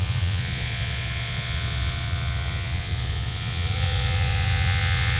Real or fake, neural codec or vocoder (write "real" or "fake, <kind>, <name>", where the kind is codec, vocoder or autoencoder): fake, vocoder, Vocos